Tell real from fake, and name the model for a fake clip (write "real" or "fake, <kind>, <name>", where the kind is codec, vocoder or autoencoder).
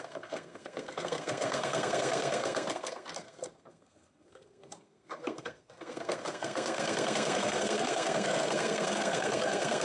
fake, codec, SNAC